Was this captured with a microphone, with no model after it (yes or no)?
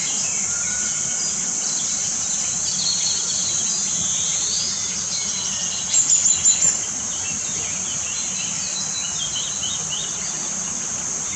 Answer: yes